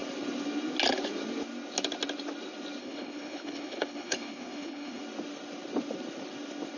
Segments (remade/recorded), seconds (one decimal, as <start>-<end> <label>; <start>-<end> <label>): 0.0-2.8 recorded; 2.8-5.0 remade; 5.0-6.8 recorded